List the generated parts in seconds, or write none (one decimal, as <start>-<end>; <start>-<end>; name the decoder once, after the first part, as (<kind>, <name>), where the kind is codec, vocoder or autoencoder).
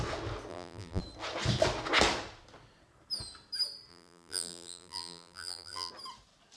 0.5-1.0 (vocoder, BigVGAN v2); 3.9-5.9